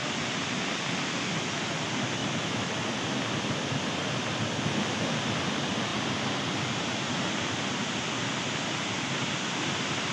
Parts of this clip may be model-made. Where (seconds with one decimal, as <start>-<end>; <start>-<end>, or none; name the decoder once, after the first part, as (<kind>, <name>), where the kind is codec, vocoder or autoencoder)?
2.2-2.7 (autoencoder, DAC-VAE)